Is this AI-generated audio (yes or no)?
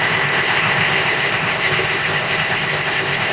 yes